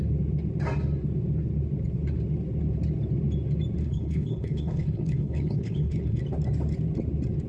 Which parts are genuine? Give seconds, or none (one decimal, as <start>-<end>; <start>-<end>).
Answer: 0.0-3.8; 6.2-7.5